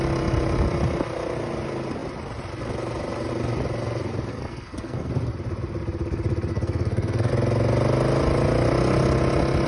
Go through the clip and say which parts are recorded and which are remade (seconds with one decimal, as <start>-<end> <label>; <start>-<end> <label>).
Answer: 0.0-4.3 recorded; 4.3-5.1 remade; 5.1-6.5 recorded; 6.5-7.3 remade; 7.3-9.7 recorded